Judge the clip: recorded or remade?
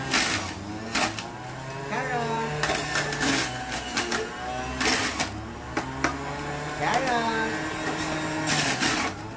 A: recorded